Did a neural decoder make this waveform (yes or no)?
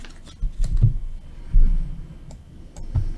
no